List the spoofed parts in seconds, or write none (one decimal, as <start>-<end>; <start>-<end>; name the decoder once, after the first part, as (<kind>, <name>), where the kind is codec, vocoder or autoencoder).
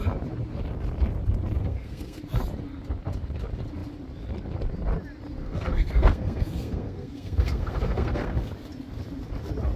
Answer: 1.6-2.2 (codec, SNAC); 5.4-8.5